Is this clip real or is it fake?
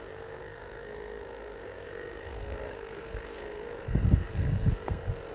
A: fake